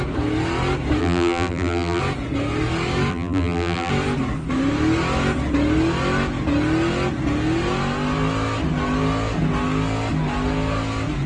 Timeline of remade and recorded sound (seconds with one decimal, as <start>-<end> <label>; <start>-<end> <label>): 0.0-1.0 recorded; 1.0-2.0 remade; 2.0-3.1 recorded; 3.1-3.9 remade; 3.9-11.3 recorded